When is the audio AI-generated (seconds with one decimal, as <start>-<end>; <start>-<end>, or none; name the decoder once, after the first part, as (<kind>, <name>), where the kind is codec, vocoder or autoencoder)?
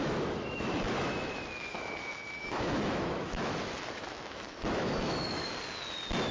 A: 0.0-5.5 (autoencoder, DAC-VAE)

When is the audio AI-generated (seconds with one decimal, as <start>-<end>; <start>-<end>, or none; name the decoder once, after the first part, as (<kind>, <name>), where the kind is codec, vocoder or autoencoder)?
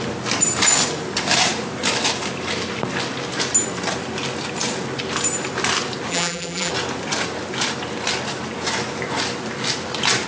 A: 6.1-6.7 (vocoder, BigVGAN v2)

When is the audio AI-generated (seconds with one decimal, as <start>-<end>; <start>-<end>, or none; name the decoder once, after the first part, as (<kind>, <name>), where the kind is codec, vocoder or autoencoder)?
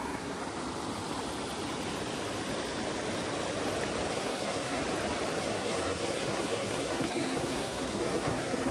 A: 0.0-0.4 (codec, SNAC); 4.1-4.8; 5.4-8.7